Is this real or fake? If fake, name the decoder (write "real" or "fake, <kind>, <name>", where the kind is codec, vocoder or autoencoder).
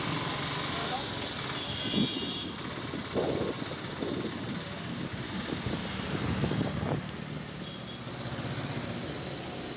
real